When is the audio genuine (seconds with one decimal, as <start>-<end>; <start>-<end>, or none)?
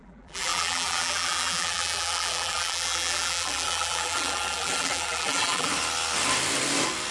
5.7-7.1